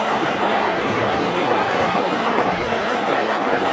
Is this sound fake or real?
fake